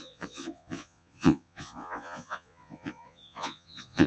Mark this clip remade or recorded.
remade